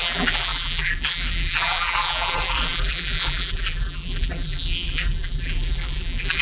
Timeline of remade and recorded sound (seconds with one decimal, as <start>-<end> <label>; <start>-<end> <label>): 0.0-6.4 remade